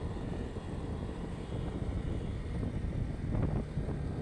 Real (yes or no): yes